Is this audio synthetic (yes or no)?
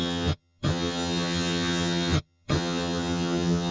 yes